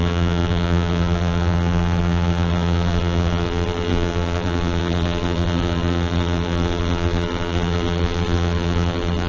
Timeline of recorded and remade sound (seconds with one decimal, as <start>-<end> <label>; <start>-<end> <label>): 0.0-9.3 remade